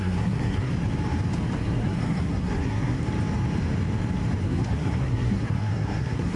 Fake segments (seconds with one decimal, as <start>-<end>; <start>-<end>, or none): 0.0-0.7; 1.6-3.0; 4.4-6.4